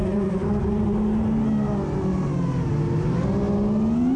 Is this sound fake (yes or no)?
no